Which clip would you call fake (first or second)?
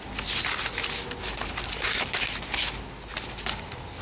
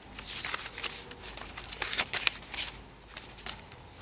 second